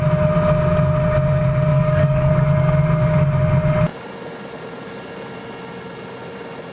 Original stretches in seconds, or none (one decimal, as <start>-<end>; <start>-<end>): 0.0-1.7; 2.3-6.7